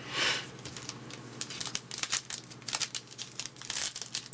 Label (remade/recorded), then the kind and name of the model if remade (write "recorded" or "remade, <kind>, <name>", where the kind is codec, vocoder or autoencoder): recorded